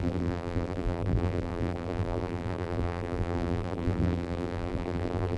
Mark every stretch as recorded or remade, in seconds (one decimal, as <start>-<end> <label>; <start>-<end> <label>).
0.0-5.4 remade